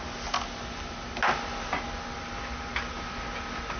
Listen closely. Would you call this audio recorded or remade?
recorded